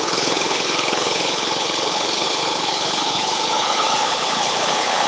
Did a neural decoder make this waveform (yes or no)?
yes